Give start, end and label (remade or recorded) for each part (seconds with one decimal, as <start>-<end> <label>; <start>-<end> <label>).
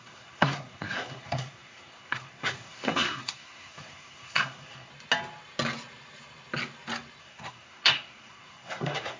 0.0-4.9 remade; 4.9-7.2 recorded; 7.2-9.2 remade